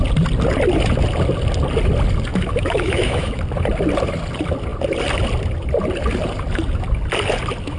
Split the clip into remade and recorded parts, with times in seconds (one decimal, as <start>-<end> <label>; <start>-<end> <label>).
0.0-2.3 recorded; 2.3-3.4 remade; 3.4-7.8 recorded

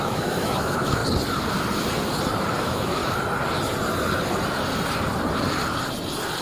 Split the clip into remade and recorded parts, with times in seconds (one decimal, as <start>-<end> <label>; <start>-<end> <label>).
0.0-1.0 remade; 1.0-2.6 recorded; 2.6-3.0 remade; 3.0-6.4 recorded

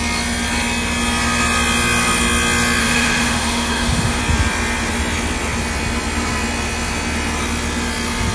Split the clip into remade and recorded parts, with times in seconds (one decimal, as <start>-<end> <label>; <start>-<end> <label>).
0.0-2.8 recorded; 2.8-4.2 remade; 4.2-8.3 recorded

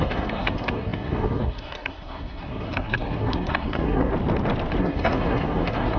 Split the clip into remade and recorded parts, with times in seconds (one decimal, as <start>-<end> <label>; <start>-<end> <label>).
0.0-4.1 remade; 4.1-4.8 recorded; 4.8-6.0 remade

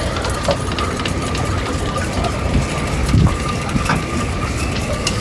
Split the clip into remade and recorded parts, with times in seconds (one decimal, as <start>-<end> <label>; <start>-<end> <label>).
0.0-3.0 recorded; 3.0-5.2 remade

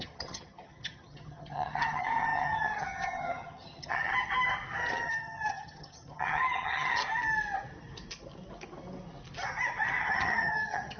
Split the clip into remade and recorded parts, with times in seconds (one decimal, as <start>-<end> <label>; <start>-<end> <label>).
0.0-4.1 remade; 4.1-4.9 recorded; 4.9-7.0 remade; 7.0-10.0 recorded; 10.0-11.0 remade